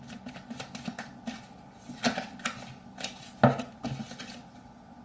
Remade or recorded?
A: recorded